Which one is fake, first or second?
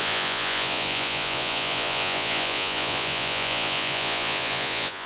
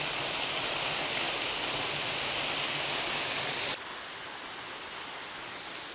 first